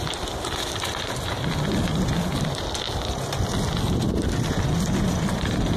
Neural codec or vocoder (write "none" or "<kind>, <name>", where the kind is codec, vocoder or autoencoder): none